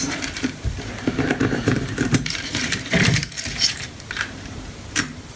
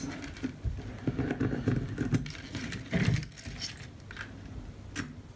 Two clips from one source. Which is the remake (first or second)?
first